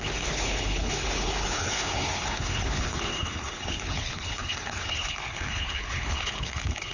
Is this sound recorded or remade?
remade